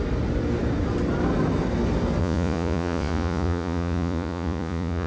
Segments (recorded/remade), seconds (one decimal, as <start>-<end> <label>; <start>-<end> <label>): 0.0-2.2 recorded; 2.2-5.1 remade